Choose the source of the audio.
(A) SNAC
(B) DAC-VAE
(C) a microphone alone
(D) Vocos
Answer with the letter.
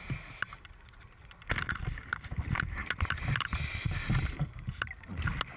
C